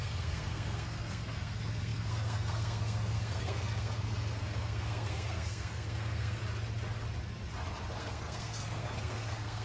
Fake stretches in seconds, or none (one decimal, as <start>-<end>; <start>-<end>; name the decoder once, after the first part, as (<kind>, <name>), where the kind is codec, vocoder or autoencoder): 0.0-6.4 (codec, SNAC); 8.0-9.6